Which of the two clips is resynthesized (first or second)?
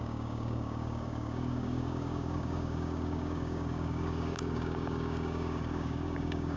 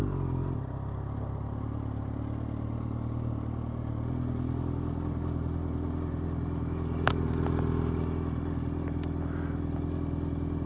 first